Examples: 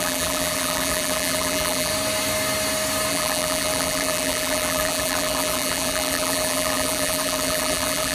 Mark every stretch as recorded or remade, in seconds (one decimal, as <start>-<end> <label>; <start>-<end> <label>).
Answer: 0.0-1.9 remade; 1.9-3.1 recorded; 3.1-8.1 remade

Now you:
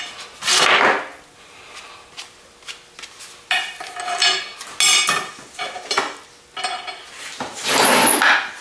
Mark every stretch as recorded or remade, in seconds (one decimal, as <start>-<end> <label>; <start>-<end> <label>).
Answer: 0.0-8.6 recorded

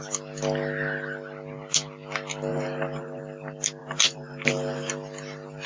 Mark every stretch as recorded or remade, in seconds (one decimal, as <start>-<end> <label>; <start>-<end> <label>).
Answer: 0.0-2.5 recorded; 2.5-3.2 remade; 3.2-3.8 recorded; 3.8-4.9 remade; 4.9-5.7 recorded

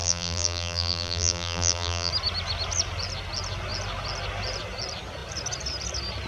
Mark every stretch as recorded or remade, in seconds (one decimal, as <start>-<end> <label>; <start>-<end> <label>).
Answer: 0.0-2.1 remade; 2.1-6.3 recorded